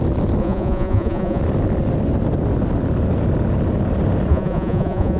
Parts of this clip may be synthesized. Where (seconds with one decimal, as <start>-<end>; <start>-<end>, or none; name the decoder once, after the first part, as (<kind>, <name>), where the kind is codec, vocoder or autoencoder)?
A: 0.4-1.4 (vocoder, Vocos); 4.3-5.2